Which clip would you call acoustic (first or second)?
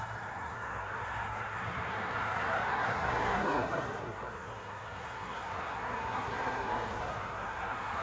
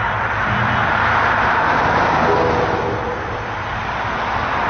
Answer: second